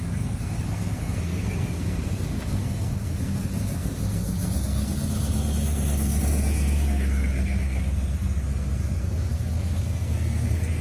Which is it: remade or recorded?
remade